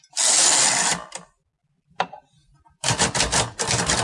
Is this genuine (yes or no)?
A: yes